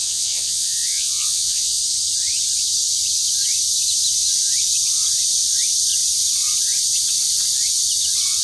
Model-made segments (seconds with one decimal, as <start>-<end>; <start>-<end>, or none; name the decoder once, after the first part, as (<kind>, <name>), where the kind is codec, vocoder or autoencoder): 0.0-1.8 (vocoder, Vocos)